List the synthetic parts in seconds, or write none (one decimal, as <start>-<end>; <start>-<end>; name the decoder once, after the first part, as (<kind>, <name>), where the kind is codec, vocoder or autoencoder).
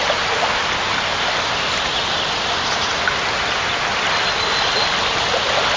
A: none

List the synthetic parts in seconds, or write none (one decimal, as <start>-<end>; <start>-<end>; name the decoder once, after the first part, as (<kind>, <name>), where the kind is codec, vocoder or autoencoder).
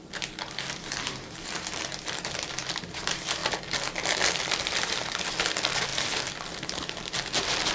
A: none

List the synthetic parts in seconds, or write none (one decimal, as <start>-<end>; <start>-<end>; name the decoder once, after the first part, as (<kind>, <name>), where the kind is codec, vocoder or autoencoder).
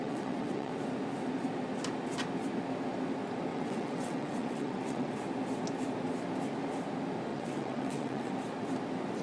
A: 0.0-0.7 (vocoder, WaveNeXt); 3.5-5.1; 7.3-8.3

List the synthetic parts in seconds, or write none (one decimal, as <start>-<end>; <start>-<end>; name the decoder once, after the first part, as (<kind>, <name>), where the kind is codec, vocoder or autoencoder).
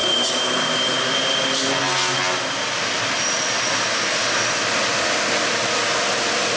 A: none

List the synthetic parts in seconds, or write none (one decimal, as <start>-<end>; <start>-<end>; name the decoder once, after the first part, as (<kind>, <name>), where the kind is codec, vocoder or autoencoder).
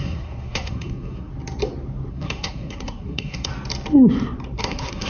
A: 0.0-1.3 (codec, SNAC); 2.1-3.5; 4.6-5.1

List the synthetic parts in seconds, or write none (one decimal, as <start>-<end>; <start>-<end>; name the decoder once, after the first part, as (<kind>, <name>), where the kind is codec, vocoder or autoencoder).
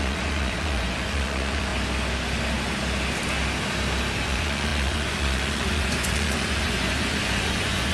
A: 0.0-1.7 (vocoder, Vocos); 4.2-7.9